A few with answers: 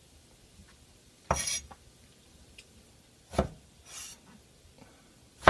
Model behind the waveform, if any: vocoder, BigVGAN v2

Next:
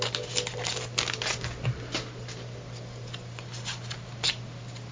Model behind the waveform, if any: none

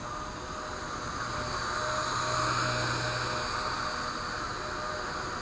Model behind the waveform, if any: none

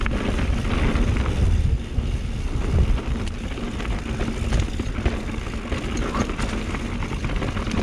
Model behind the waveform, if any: none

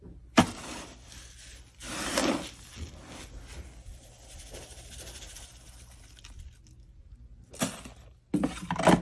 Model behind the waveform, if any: none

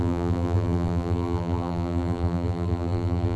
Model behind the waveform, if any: vocoder, BigVGAN v2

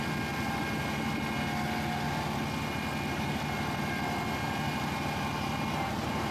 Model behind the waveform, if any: none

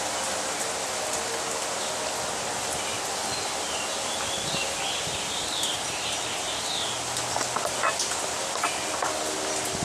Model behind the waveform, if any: none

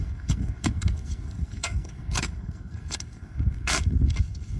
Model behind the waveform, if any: codec, SNAC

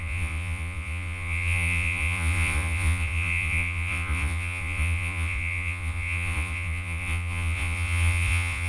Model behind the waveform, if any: vocoder, Vocos